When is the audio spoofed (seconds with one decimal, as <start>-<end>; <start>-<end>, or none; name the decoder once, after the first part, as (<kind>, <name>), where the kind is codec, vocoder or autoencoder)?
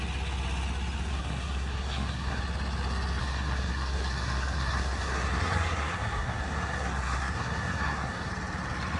1.1-2.4 (codec, SNAC); 3.2-8.3